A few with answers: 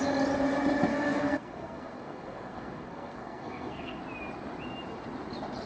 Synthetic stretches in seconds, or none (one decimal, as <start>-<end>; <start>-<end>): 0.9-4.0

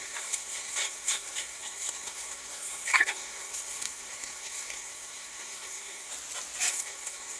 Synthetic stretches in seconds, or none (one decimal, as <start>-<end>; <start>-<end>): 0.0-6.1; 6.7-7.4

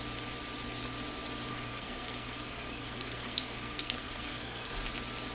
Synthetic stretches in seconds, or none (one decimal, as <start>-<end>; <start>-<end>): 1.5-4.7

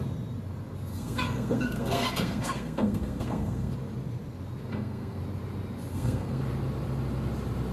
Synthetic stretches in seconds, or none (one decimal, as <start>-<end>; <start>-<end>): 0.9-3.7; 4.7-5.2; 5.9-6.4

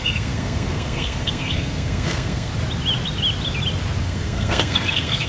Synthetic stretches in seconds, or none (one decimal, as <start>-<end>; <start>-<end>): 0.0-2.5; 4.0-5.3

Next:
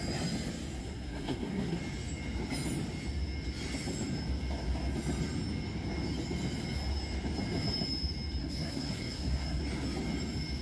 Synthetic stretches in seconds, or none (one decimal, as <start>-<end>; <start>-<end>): 0.8-1.8; 8.4-9.6

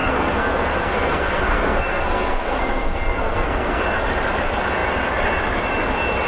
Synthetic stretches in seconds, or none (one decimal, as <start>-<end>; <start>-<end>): 0.0-3.8